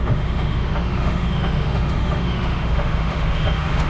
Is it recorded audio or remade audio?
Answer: remade